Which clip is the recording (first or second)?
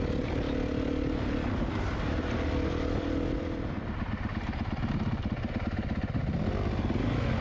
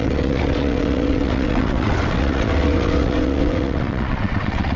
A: first